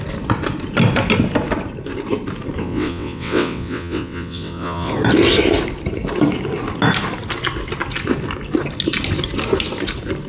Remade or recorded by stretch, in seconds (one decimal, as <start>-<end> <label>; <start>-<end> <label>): 0.0-2.6 recorded; 2.6-4.9 remade; 4.9-10.3 recorded